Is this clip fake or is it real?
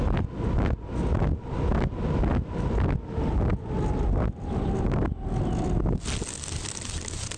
real